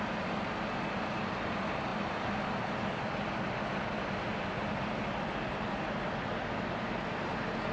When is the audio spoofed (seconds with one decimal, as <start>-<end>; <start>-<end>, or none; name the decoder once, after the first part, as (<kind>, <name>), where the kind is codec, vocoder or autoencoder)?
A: none